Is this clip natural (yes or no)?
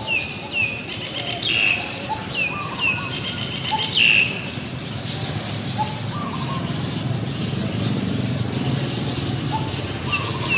yes